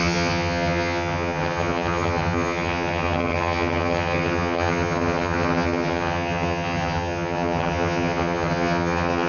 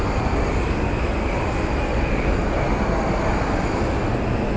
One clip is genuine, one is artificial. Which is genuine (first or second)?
second